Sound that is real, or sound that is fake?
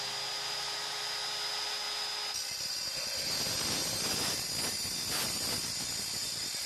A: real